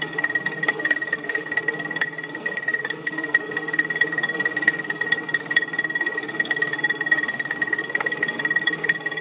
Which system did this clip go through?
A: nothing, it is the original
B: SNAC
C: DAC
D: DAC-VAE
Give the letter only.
B